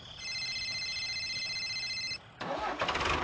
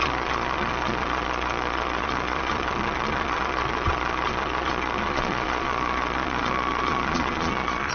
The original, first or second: first